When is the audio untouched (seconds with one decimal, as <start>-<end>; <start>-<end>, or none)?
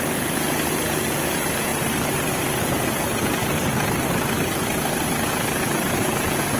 1.7-2.9; 3.4-5.3